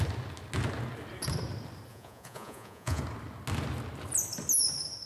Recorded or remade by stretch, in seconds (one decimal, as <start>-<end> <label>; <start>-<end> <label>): 0.0-1.9 recorded; 1.9-3.0 remade; 3.0-5.1 recorded